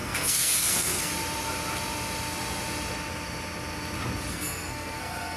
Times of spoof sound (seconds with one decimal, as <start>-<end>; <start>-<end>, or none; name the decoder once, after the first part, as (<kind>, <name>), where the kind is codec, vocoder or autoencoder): 0.0-1.1 (codec, SNAC); 4.3-5.4